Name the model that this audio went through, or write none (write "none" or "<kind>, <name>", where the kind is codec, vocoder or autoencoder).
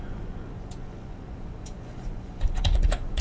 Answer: vocoder, Vocos